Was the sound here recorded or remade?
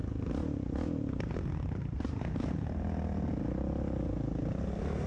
recorded